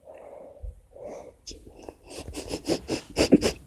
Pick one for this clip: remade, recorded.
recorded